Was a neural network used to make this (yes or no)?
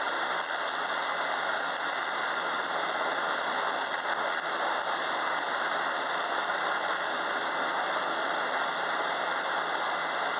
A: no